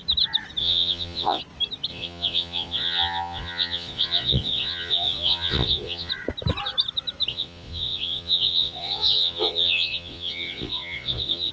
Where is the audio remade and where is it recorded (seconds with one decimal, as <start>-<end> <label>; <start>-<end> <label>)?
0.0-0.6 recorded; 0.6-1.4 remade; 1.4-1.9 recorded; 1.9-6.1 remade; 6.1-7.3 recorded; 7.3-11.5 remade